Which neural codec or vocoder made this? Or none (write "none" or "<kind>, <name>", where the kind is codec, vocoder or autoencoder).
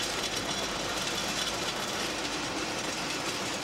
vocoder, BigVGAN v2